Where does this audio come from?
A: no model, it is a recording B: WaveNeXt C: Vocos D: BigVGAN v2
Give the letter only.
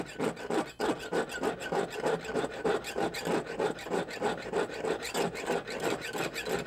A